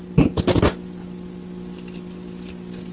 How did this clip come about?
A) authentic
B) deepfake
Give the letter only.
A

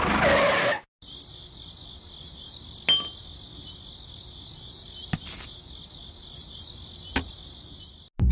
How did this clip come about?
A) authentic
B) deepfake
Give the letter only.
A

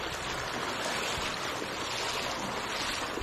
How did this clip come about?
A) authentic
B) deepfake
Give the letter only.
A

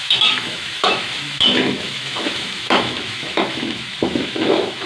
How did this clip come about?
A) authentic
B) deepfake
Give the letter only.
B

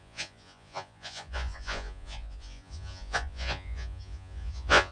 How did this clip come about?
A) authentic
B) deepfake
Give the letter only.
B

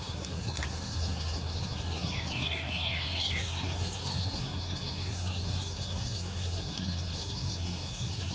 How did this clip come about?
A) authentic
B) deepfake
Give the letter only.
B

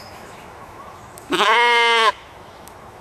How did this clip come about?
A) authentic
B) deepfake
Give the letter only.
B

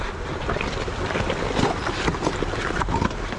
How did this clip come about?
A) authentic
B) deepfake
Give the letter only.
A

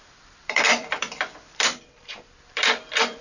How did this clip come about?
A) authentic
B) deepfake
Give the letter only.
B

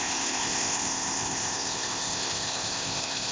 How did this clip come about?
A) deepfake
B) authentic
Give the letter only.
A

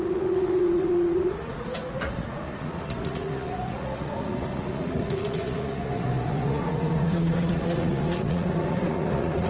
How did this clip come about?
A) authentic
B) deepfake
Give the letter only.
B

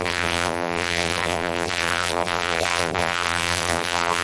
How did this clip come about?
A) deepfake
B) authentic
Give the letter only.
A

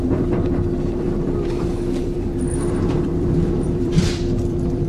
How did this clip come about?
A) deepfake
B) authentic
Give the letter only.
A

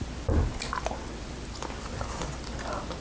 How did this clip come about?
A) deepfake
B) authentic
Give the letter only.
B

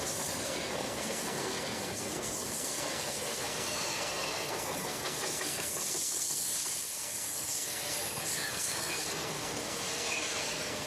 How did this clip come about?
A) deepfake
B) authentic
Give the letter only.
A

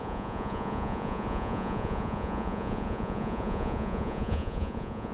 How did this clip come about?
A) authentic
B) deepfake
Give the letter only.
B